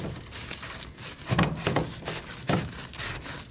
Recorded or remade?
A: recorded